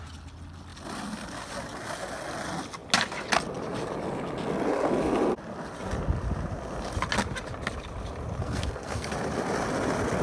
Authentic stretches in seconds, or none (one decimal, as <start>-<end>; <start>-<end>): 0.0-8.4; 9.1-10.2